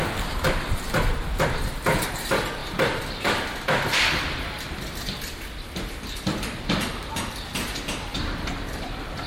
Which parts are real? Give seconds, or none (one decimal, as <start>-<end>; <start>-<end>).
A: 0.0-2.6; 7.1-8.1